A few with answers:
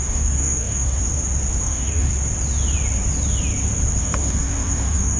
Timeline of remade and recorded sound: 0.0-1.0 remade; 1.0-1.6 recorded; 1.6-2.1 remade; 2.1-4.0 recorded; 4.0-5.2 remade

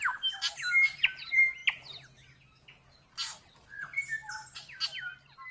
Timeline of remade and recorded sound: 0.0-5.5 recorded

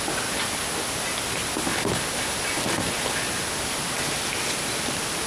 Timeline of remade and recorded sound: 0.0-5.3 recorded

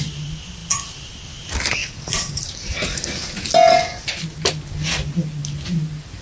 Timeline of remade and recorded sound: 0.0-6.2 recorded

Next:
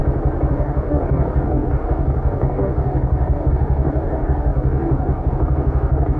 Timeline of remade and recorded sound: 0.0-0.5 recorded; 0.5-6.2 remade